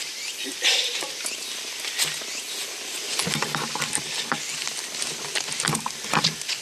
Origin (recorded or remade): recorded